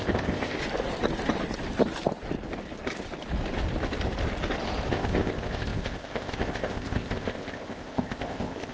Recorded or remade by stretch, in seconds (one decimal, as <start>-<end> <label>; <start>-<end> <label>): 0.0-0.6 remade; 0.6-4.9 recorded; 4.9-8.7 remade